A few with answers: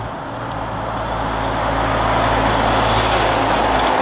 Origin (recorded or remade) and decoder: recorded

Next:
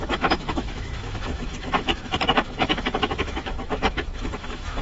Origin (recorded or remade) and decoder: remade, autoencoder, DAC-VAE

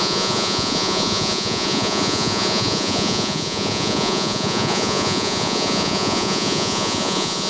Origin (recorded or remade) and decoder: remade, vocoder, Vocos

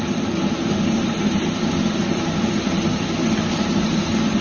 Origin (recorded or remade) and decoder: recorded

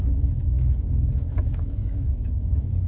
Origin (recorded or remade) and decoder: remade, autoencoder, DAC-VAE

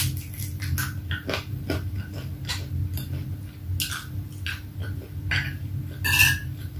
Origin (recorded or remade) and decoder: recorded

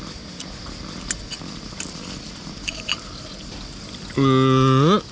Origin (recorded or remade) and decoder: recorded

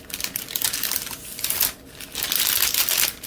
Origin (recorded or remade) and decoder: recorded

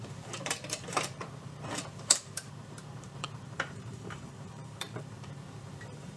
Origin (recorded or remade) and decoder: remade, vocoder, BigVGAN v2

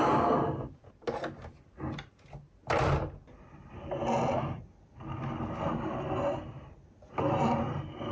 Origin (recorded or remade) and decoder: recorded